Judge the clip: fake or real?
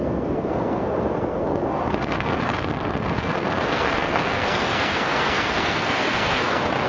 fake